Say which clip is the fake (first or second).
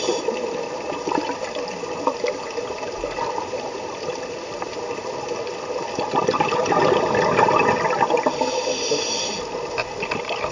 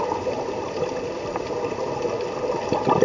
first